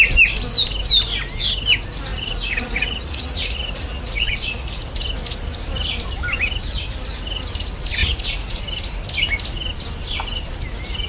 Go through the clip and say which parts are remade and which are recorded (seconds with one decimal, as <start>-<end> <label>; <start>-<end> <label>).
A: 0.0-2.1 recorded; 2.1-4.8 remade; 4.8-8.0 recorded; 8.0-8.6 remade; 8.6-11.1 recorded